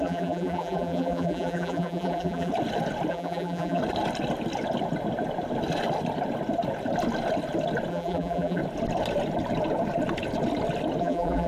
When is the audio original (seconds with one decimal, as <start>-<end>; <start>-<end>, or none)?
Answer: 2.5-3.1; 3.8-7.9; 8.6-11.0